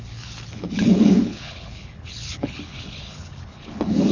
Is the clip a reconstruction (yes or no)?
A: yes